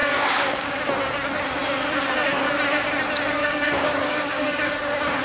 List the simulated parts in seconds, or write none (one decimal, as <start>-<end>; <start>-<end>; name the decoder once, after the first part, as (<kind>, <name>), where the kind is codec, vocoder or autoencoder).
0.0-0.8 (codec, DAC); 3.4-4.7

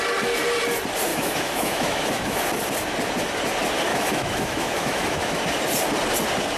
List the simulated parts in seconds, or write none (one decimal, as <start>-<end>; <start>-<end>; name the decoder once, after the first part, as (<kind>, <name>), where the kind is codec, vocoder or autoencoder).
1.1-2.4 (autoencoder, DAC-VAE); 3.9-5.4

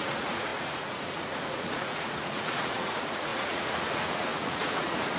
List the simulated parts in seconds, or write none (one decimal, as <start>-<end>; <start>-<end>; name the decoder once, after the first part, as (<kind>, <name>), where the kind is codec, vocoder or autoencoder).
0.0-5.2 (vocoder, Vocos)

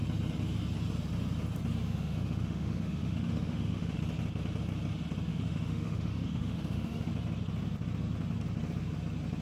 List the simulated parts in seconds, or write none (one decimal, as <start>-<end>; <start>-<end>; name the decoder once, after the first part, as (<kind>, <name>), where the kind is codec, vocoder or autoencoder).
1.8-4.0 (autoencoder, DAC-VAE); 5.3-7.1

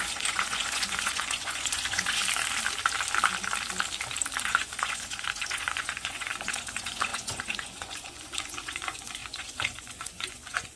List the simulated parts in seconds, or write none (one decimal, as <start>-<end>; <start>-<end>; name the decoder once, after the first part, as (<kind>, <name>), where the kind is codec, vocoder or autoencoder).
0.0-2.2 (vocoder, Vocos); 4.4-10.8

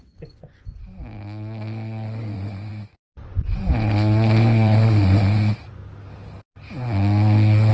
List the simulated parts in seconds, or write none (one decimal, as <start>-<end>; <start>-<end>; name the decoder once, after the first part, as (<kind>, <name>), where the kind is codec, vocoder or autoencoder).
0.0-0.8 (vocoder, Vocos); 2.2-5.8